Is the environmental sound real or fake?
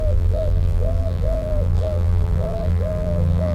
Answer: fake